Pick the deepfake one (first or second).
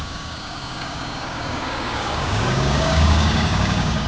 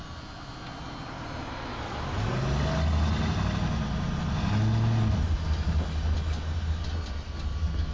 first